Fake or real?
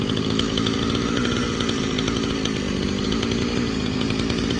real